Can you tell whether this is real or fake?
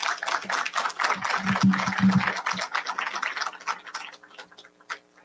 real